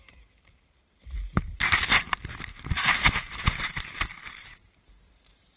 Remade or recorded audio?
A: remade